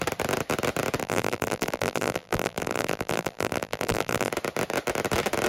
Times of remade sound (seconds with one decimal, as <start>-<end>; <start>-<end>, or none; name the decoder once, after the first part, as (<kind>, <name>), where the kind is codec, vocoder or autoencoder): 1.0-4.3 (vocoder, BigVGAN v2)